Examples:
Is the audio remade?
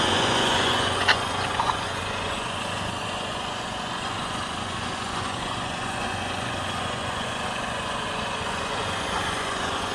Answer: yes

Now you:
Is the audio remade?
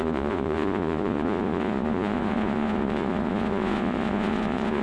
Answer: yes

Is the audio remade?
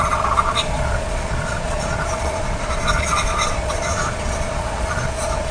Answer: yes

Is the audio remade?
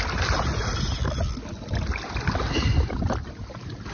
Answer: no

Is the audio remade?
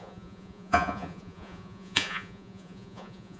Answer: yes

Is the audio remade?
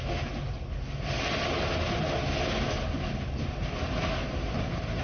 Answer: no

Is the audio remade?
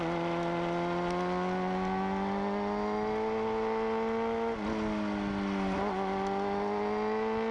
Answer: no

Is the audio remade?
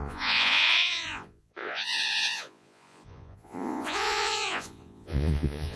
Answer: yes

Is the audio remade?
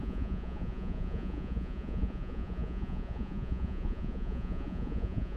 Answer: yes